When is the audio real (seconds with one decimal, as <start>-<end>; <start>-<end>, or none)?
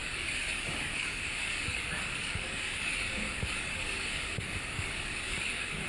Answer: none